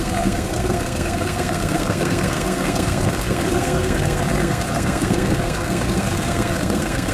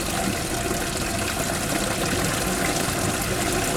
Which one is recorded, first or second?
second